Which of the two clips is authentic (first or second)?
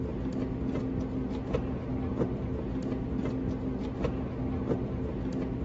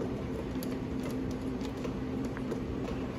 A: first